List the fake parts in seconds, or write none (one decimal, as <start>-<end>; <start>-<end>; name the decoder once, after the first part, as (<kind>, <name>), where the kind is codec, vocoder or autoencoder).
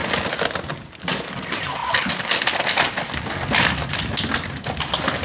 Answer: none